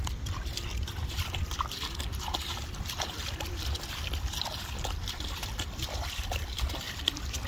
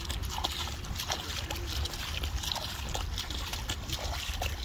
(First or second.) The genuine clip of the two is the second